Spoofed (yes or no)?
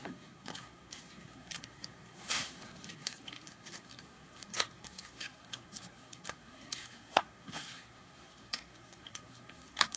yes